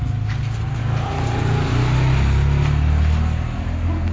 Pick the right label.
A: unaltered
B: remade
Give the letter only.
A